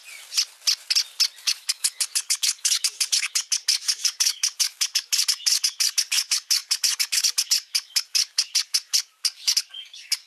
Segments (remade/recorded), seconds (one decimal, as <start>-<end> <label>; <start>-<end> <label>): 0.0-1.4 recorded; 1.4-10.3 remade